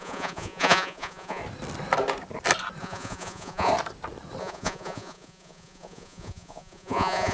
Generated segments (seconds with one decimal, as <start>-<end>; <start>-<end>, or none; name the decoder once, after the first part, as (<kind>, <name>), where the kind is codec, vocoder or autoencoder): 0.0-1.4 (vocoder, Vocos); 2.8-3.7; 4.4-7.3